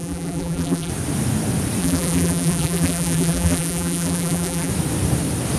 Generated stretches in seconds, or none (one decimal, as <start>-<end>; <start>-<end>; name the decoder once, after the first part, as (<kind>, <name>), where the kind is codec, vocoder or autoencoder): 0.0-0.9 (vocoder, BigVGAN v2); 1.8-4.7